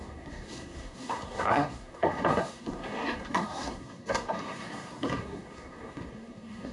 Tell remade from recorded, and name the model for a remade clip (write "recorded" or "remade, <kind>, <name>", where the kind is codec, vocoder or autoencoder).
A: remade, codec, SNAC